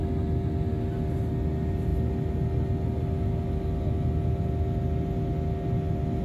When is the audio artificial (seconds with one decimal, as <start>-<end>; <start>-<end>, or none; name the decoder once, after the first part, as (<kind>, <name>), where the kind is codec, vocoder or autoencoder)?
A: none